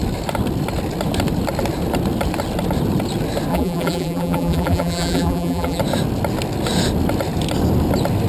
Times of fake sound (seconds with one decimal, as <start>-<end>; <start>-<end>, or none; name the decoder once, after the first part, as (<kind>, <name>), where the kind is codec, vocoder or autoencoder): 3.5-5.8 (vocoder, BigVGAN v2)